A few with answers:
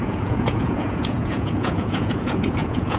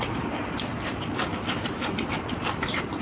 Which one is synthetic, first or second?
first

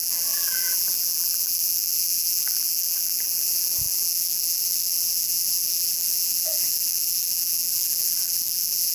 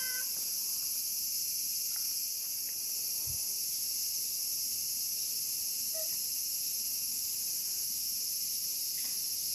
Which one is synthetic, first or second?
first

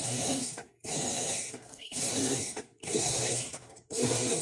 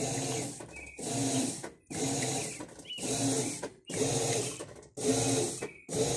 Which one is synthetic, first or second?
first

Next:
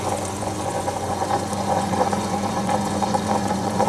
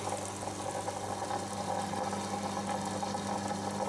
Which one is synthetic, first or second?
first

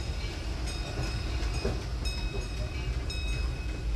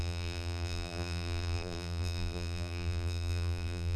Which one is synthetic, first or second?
second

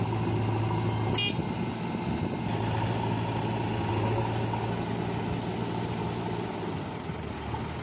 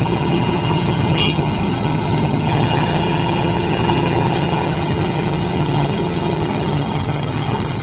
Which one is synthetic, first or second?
second